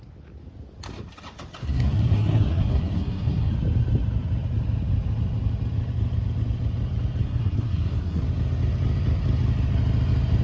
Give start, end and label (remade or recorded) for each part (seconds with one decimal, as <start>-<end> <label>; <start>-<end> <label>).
0.0-1.6 recorded; 1.6-3.5 remade; 3.5-7.2 recorded; 7.2-8.2 remade; 8.2-10.4 recorded